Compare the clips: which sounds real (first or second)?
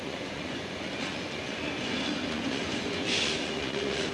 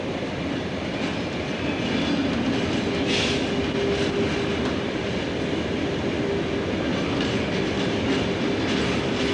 second